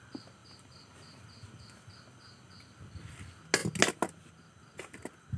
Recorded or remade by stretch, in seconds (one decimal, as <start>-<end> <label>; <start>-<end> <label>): 0.0-5.4 recorded

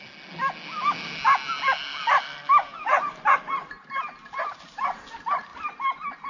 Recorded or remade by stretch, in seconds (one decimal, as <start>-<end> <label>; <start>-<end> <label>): 0.0-2.6 recorded; 2.6-3.1 remade; 3.1-6.3 recorded

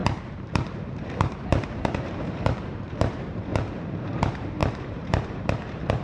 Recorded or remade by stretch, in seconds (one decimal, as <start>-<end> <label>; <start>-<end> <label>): 0.0-3.5 remade; 3.5-4.0 recorded; 4.0-6.0 remade

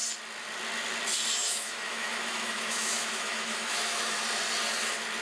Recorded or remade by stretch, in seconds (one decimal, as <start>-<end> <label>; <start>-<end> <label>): 0.0-1.4 recorded; 1.4-4.2 remade; 4.2-5.2 recorded

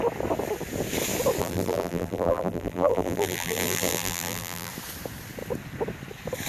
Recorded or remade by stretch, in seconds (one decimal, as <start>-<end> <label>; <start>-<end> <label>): 0.0-1.4 recorded; 1.4-4.7 remade; 4.7-6.5 recorded

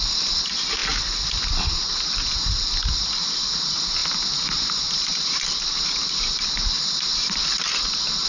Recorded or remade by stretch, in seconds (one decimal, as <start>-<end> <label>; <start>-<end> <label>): 0.0-8.3 recorded

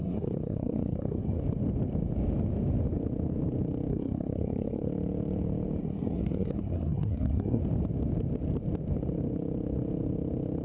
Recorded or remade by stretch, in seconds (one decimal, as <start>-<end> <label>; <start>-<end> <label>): 0.0-1.4 remade; 1.4-3.9 recorded; 3.9-4.9 remade; 4.9-5.8 recorded; 5.8-7.6 remade; 7.6-10.6 recorded